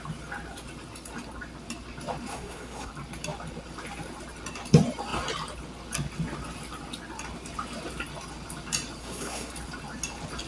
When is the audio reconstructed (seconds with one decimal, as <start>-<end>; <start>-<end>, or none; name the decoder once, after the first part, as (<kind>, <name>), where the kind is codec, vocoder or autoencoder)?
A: 2.3-2.9 (codec, SNAC); 9.0-9.5